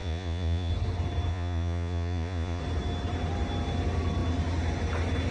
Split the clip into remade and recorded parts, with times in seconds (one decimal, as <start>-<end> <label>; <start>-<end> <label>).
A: 0.0-0.7 remade; 0.7-1.3 recorded; 1.3-2.6 remade; 2.6-5.3 recorded